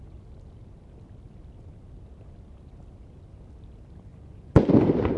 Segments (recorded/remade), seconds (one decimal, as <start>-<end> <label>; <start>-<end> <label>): 0.0-4.1 recorded; 4.1-4.7 remade; 4.7-5.2 recorded